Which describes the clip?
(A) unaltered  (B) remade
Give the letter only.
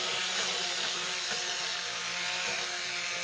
A